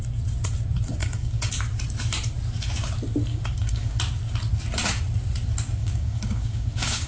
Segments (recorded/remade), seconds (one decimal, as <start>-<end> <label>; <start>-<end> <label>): 0.0-1.0 recorded; 1.0-1.5 remade; 1.5-3.3 recorded; 3.3-4.0 remade; 4.0-5.8 recorded; 5.8-7.1 remade